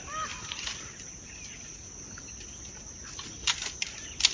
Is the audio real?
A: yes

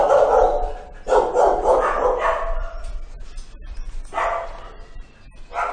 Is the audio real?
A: yes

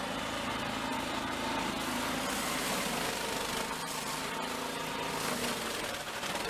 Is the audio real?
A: yes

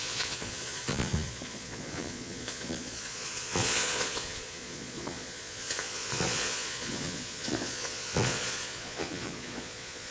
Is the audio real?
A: no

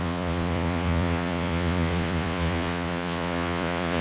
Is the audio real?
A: no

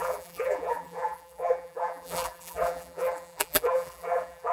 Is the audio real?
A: no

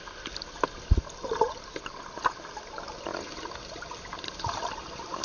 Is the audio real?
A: yes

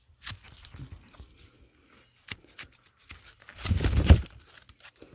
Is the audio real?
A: yes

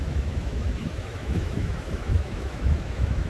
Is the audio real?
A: no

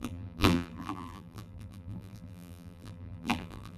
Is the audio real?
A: no